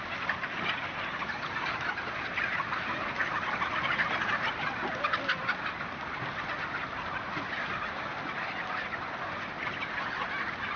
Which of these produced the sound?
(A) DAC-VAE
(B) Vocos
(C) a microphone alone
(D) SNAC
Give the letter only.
C